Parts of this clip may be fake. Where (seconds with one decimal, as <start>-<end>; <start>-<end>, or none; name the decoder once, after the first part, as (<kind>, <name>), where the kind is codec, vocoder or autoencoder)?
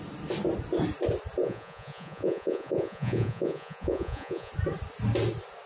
1.4-4.5 (vocoder, Vocos)